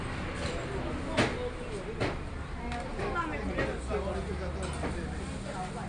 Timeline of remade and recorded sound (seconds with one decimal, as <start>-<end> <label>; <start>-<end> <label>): 0.0-5.9 recorded